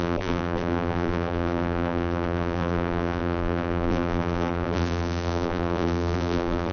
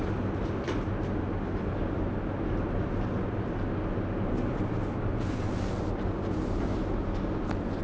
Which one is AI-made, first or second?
first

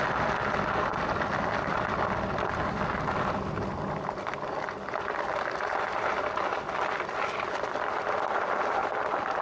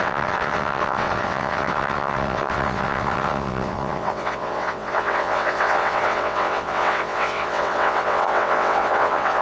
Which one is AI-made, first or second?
second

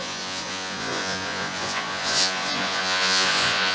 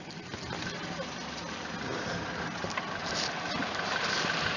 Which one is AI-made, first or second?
first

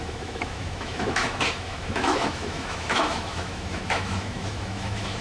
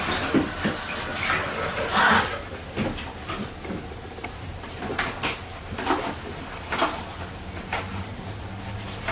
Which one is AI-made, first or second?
first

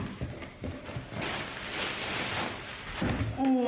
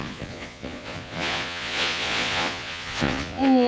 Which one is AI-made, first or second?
second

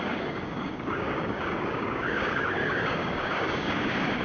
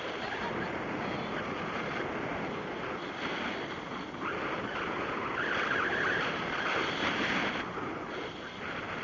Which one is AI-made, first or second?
first